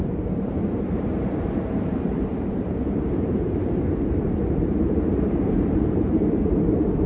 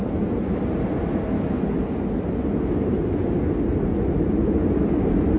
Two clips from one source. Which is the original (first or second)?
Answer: second